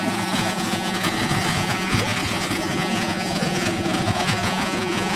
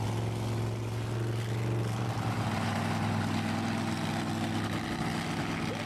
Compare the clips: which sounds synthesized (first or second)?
first